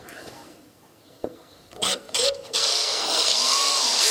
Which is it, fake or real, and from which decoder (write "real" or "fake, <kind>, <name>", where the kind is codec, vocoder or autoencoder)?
fake, codec, SNAC